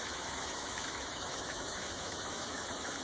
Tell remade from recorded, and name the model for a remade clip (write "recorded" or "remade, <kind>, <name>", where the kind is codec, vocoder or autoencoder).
remade, autoencoder, DAC-VAE